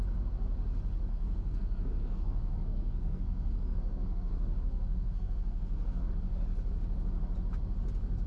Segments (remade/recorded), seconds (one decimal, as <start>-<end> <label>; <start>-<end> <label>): 0.0-1.1 recorded; 1.1-6.1 remade; 6.1-8.3 recorded